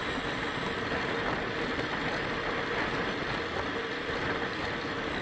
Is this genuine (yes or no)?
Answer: yes